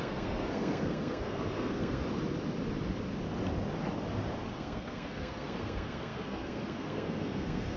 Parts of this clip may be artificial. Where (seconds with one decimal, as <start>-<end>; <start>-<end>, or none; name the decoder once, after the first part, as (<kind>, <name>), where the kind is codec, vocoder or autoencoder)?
0.0-2.0 (codec, SNAC); 4.5-7.8